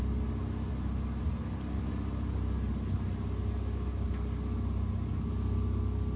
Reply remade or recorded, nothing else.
recorded